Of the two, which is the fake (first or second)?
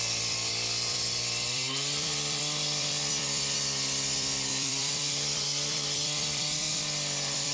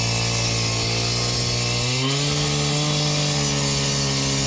first